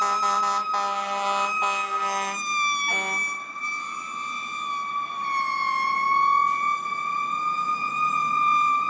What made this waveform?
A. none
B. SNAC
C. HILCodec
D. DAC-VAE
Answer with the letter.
A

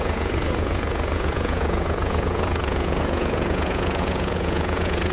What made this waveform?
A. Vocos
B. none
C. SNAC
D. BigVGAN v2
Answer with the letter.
A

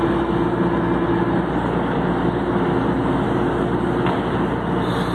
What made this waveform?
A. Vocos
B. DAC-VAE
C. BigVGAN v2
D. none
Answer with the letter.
D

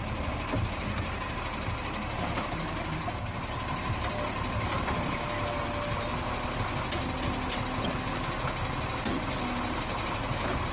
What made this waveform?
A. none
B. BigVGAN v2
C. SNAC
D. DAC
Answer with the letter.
A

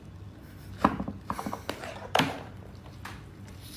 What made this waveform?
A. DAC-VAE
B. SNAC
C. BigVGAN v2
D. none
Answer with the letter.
C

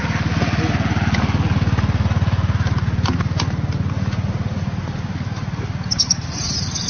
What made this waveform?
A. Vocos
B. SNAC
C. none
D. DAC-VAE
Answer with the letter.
C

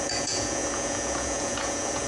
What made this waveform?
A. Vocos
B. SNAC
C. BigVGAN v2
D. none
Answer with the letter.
A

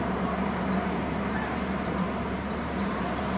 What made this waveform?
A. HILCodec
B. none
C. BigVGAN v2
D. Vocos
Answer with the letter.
C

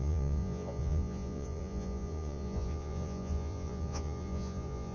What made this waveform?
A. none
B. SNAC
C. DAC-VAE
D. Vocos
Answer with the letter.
D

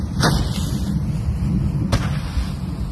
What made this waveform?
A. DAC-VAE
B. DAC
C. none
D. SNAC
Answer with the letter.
C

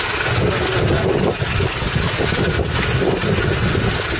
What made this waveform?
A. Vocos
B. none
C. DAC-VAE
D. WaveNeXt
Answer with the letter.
B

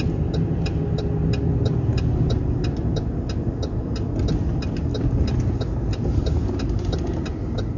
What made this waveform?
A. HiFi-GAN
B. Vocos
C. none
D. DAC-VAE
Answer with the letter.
C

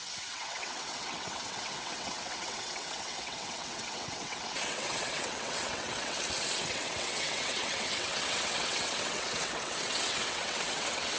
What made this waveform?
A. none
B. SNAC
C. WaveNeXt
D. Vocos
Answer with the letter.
C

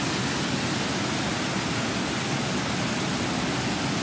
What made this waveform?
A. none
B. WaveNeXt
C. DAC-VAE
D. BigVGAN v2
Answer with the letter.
A